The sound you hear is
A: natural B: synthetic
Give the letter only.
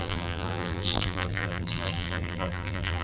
B